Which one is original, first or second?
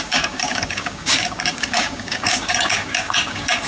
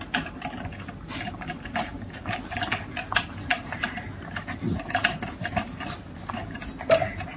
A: second